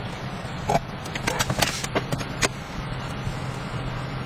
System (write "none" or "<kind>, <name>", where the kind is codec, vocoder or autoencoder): none